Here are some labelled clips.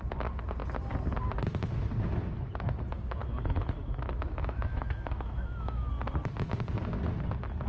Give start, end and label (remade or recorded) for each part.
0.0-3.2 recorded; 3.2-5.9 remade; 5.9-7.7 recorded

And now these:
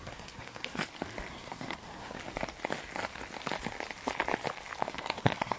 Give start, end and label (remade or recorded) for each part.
0.0-0.8 remade; 0.8-1.3 recorded; 1.3-2.2 remade; 2.2-4.8 recorded; 4.8-5.6 remade

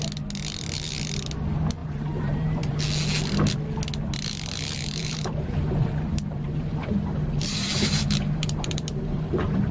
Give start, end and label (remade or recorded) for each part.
0.0-1.8 recorded; 1.8-2.8 remade; 2.8-5.0 recorded; 5.0-9.7 remade